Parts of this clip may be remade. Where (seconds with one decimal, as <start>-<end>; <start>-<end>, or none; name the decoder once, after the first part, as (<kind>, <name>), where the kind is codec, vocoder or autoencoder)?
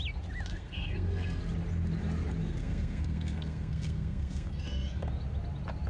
0.5-1.4 (codec, SNAC); 2.4-5.1